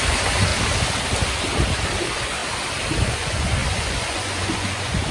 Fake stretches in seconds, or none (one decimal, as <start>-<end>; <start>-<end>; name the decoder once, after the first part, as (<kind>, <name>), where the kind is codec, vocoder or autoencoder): 0.0-0.5 (vocoder, Vocos); 2.0-2.4; 3.0-5.1